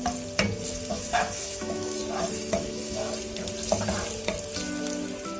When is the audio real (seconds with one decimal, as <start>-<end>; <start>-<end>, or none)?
0.0-0.9; 2.0-2.4; 3.1-5.4